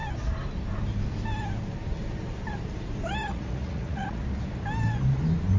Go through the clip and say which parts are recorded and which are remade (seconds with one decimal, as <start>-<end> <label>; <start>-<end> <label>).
0.0-3.3 recorded; 3.3-4.2 remade; 4.2-5.6 recorded

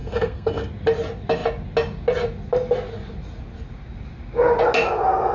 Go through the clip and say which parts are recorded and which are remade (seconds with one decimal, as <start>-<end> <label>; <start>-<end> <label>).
0.0-0.7 remade; 0.7-5.3 recorded

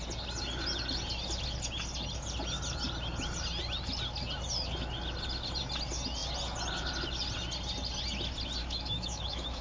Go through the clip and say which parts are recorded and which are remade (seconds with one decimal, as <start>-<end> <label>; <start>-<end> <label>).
0.0-8.6 recorded; 8.6-9.6 remade

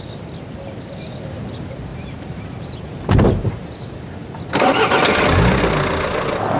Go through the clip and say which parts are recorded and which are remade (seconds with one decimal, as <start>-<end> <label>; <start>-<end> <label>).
0.0-1.9 recorded; 1.9-3.7 remade; 3.7-6.6 recorded

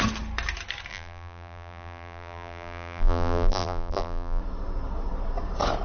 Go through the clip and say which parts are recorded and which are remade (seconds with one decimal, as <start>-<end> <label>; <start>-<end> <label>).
0.0-0.9 recorded; 0.9-4.4 remade; 4.4-5.8 recorded

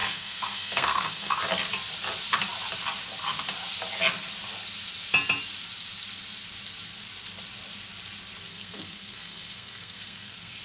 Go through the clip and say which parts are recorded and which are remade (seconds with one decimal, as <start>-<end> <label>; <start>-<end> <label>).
0.0-1.4 remade; 1.4-8.5 recorded; 8.5-10.6 remade

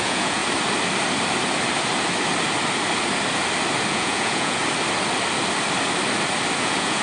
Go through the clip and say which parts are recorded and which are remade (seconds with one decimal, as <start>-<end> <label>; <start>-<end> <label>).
0.0-0.4 remade; 0.4-3.9 recorded; 3.9-4.6 remade; 4.6-6.6 recorded; 6.6-7.0 remade

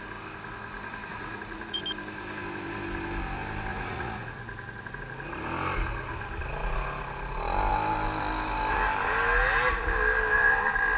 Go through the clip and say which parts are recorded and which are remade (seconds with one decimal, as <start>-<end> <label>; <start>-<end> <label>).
0.0-1.1 recorded; 1.1-1.8 remade; 1.8-3.7 recorded; 3.7-4.4 remade; 4.4-11.0 recorded